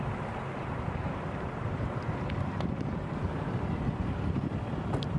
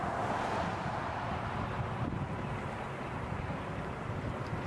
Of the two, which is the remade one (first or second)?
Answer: first